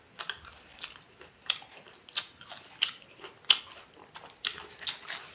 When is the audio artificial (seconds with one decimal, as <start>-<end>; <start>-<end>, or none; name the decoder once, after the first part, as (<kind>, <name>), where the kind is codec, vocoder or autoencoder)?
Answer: none